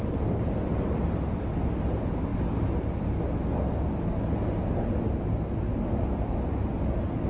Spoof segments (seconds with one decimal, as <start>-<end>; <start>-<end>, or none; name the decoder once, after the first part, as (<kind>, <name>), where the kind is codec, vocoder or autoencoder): none